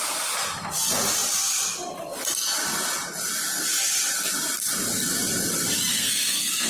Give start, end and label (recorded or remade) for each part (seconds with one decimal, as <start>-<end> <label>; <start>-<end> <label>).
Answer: 0.0-5.9 recorded; 5.9-6.7 remade